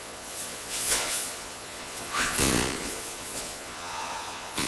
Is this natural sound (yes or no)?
no